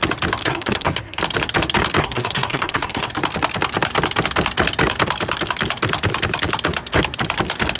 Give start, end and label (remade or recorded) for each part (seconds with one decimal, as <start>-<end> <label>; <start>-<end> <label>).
0.0-0.4 recorded; 0.4-1.2 remade; 1.2-2.0 recorded; 2.0-3.1 remade; 3.1-7.8 recorded